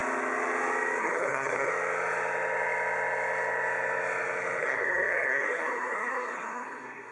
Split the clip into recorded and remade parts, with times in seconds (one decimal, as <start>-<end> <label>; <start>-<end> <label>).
0.0-1.0 recorded; 1.0-1.7 remade; 1.7-4.6 recorded; 4.6-7.1 remade